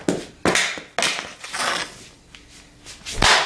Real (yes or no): yes